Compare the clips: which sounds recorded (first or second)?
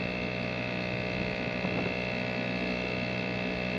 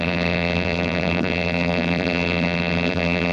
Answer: first